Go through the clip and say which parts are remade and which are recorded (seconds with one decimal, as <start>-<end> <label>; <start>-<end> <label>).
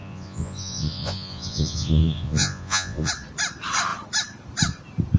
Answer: 0.0-3.1 remade; 3.1-5.2 recorded